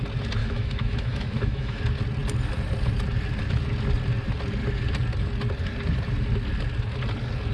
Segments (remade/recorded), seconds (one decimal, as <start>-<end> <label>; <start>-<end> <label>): 0.0-0.4 recorded; 0.4-1.8 remade; 1.8-7.5 recorded